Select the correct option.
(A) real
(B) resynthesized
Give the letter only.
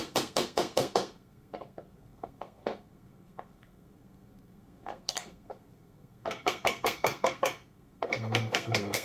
B